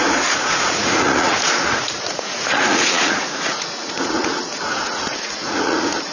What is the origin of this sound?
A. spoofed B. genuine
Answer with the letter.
A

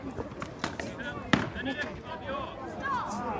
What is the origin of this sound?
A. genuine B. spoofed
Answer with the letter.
A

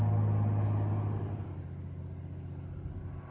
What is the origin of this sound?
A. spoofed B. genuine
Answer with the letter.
B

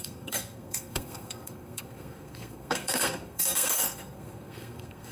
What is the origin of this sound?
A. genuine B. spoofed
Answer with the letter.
B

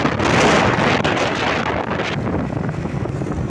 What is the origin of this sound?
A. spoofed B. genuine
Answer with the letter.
B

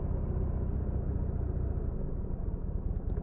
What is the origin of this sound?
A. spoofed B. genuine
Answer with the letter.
B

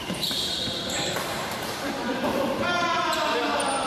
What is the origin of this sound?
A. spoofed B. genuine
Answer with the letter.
A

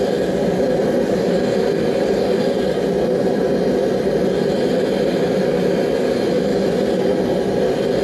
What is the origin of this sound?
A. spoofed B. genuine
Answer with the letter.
B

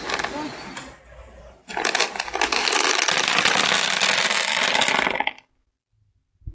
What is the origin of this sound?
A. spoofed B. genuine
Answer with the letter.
B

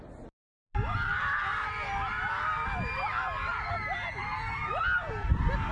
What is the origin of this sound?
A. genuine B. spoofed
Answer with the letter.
A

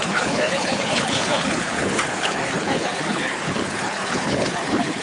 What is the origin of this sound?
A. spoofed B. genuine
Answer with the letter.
A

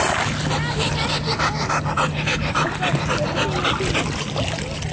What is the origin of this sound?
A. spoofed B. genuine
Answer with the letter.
B